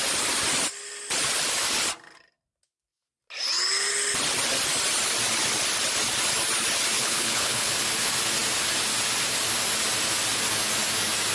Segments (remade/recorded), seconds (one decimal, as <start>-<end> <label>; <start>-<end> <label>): 0.0-7.0 recorded; 7.0-7.7 remade; 7.7-11.3 recorded